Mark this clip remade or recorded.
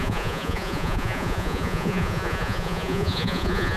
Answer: remade